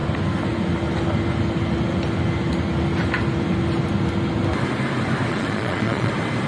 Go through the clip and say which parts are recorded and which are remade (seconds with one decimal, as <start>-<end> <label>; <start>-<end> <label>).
0.0-5.3 recorded; 5.3-6.1 remade; 6.1-6.5 recorded